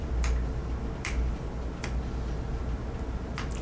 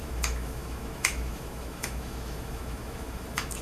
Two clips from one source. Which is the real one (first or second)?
first